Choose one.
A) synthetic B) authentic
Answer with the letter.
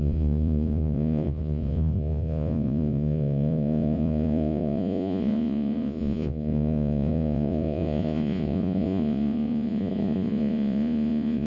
A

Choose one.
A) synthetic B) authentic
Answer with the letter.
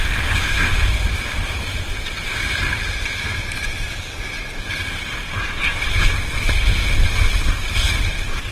B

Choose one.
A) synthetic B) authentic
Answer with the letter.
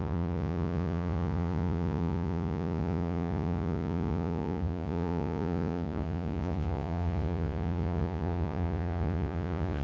A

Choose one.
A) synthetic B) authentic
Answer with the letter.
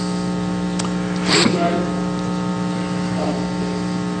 B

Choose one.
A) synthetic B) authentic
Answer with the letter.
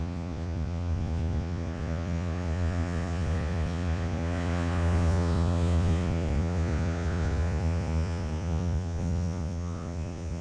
A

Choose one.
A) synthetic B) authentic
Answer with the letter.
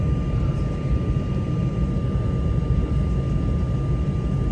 B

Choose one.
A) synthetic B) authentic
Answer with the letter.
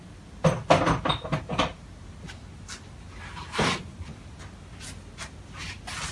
B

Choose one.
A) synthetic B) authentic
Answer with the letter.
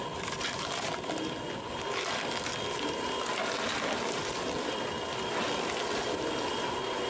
B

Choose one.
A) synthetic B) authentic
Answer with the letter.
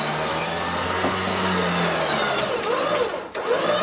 B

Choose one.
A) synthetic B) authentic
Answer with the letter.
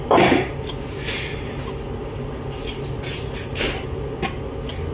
B